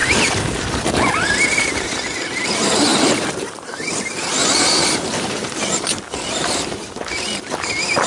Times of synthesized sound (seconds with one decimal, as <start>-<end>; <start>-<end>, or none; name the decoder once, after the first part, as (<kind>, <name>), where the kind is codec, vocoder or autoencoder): 2.5-8.1 (vocoder, BigVGAN v2)